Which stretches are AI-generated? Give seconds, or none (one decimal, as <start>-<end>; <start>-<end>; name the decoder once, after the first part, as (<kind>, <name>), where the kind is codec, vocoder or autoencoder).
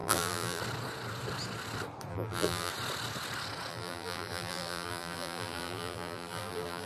0.0-0.6 (vocoder, BigVGAN v2); 2.1-2.7; 3.7-6.9